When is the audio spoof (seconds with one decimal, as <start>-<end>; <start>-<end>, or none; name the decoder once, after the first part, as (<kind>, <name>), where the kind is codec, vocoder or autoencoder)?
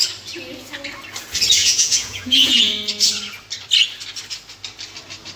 1.6-2.7 (vocoder, Vocos)